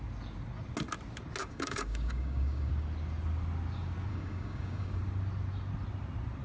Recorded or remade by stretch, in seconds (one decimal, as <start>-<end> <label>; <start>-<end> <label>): 0.0-1.4 recorded; 1.4-2.7 remade; 2.7-4.1 recorded; 4.1-5.0 remade; 5.0-6.4 recorded